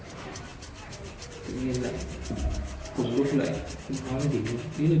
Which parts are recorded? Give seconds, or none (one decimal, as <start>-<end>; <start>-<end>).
0.0-5.0